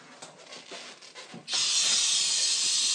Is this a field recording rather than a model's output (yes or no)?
yes